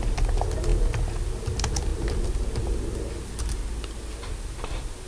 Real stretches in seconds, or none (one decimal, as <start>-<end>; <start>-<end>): 0.0-5.1